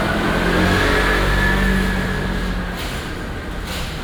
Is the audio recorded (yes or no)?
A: yes